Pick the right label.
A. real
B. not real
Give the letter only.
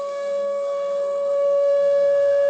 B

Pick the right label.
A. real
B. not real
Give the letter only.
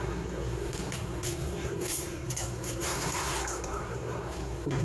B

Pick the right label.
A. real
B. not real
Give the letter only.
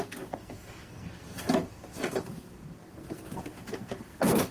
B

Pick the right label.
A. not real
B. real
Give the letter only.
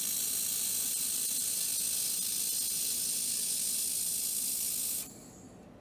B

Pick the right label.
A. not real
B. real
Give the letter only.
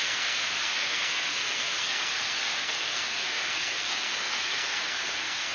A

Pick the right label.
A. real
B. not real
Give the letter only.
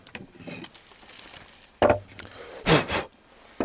A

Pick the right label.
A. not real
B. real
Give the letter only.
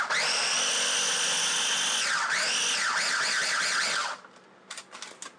B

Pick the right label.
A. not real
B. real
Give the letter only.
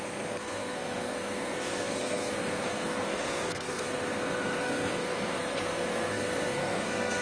A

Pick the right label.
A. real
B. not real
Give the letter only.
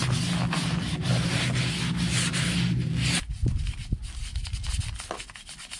A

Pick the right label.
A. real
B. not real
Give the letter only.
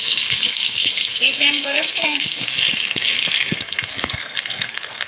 B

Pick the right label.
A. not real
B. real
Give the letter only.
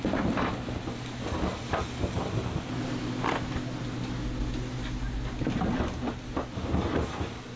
B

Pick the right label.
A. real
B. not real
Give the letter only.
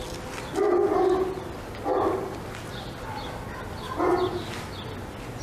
A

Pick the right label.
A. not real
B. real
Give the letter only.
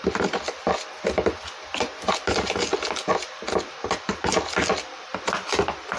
B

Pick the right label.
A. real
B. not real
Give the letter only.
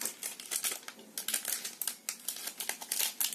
A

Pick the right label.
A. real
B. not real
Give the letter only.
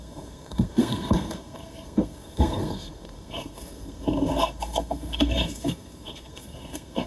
B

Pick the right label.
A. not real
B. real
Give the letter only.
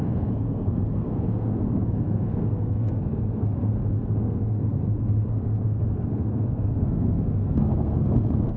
A